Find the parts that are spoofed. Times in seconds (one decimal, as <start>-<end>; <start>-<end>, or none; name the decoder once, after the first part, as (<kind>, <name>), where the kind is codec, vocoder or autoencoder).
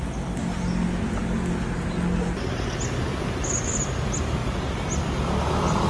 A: none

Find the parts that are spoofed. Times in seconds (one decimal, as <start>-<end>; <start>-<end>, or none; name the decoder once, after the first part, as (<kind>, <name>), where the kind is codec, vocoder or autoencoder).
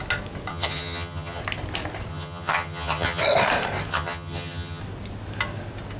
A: 0.5-1.4 (vocoder, HiFi-GAN); 2.1-3.2; 3.9-4.8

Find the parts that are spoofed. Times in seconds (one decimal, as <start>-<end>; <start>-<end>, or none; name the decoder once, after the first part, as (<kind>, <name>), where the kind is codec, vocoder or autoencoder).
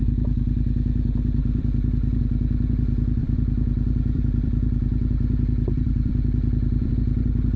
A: 1.4-2.2 (vocoder, BigVGAN v2); 3.2-6.9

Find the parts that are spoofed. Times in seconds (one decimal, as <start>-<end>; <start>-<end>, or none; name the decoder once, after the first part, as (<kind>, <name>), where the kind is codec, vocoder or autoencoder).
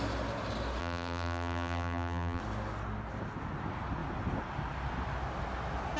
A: 0.8-2.4 (vocoder, BigVGAN v2)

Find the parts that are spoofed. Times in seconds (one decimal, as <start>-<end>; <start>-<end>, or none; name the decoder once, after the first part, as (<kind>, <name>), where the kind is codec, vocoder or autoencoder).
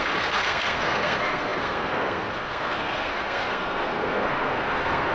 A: 0.0-5.1 (codec, SNAC)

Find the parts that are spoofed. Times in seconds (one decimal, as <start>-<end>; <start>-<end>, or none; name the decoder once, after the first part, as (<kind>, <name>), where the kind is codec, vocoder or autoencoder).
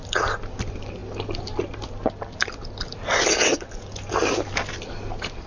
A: none